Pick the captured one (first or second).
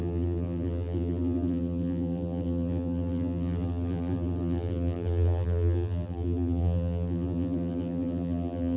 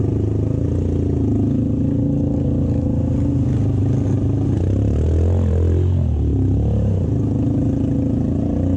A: second